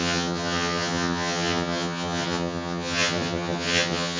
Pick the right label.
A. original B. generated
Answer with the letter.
B